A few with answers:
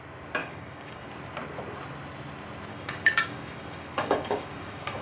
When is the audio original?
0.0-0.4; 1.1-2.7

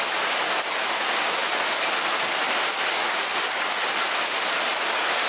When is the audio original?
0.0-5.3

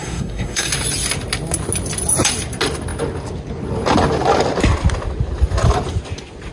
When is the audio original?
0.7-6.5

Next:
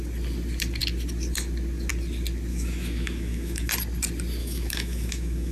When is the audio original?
0.0-2.5; 3.7-4.4

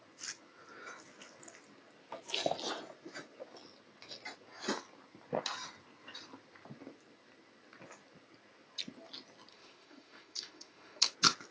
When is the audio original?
0.0-9.5; 11.1-11.5

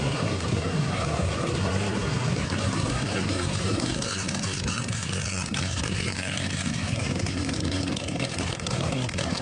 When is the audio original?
none

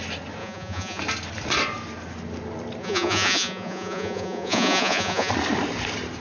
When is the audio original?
0.0-0.4; 1.0-2.8; 5.3-6.2